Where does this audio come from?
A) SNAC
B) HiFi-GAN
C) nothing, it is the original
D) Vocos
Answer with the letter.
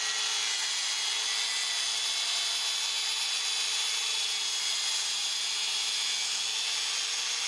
C